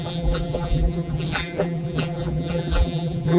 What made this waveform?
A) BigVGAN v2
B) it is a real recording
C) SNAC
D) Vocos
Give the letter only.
A